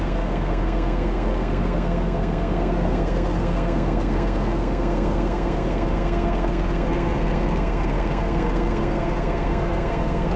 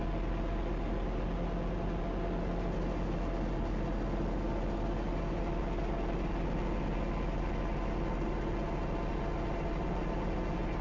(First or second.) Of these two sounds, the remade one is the first